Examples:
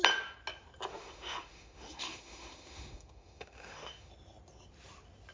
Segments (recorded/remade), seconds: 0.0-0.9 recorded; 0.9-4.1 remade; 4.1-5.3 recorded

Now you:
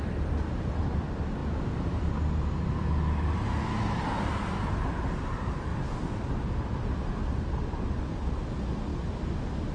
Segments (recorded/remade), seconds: 0.0-9.7 recorded

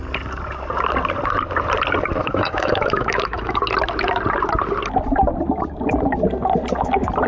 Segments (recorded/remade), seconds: 0.0-2.2 recorded; 2.2-3.6 remade; 3.6-7.3 recorded

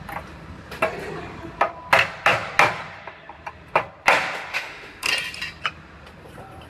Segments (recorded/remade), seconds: 0.0-4.5 recorded; 4.5-5.1 remade; 5.1-6.7 recorded